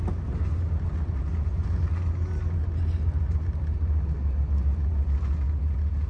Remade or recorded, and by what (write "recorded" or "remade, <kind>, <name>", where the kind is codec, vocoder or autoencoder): recorded